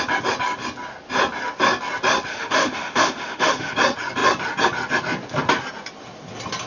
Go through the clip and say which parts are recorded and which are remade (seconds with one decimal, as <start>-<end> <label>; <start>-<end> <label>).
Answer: 0.0-2.3 recorded; 2.3-3.7 remade; 3.7-6.7 recorded